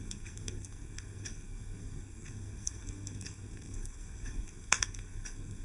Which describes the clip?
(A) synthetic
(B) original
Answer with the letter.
A